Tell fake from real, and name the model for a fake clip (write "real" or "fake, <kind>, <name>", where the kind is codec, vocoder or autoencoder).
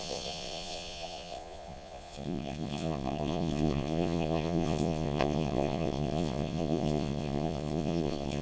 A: fake, vocoder, Vocos